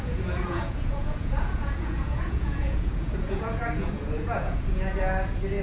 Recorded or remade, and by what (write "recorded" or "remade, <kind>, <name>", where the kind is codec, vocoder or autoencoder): remade, vocoder, Vocos